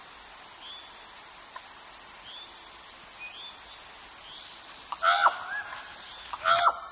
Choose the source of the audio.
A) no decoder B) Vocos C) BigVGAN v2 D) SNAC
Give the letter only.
A